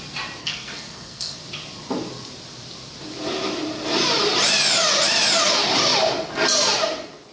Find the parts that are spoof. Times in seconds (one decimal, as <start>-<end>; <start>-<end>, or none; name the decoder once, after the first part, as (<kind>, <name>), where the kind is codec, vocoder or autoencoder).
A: 0.4-1.4 (codec, SNAC)